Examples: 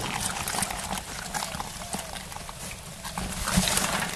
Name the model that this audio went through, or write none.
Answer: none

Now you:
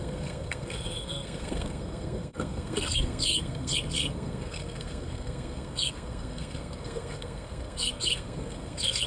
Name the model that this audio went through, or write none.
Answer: codec, SNAC